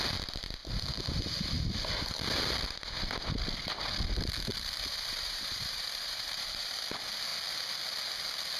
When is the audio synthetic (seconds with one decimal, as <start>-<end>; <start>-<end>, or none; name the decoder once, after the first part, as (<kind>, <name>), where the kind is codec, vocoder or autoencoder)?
4.5-6.7 (vocoder, BigVGAN v2)